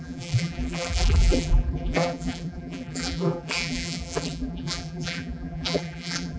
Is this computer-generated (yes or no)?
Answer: yes